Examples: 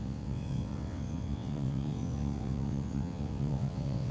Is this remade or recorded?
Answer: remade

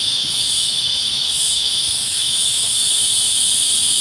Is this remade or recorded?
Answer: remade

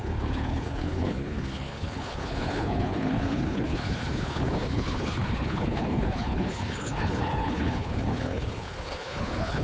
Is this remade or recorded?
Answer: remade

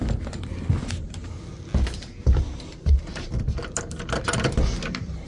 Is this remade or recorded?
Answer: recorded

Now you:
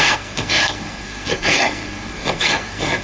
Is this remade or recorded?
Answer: remade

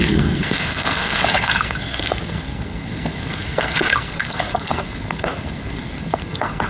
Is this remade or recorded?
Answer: remade